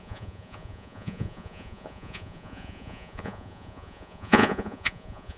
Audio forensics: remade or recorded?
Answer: remade